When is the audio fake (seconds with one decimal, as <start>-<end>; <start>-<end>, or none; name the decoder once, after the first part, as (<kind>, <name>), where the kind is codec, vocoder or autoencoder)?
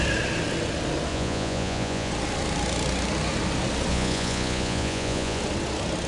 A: 1.1-2.1 (vocoder, Vocos); 3.9-5.4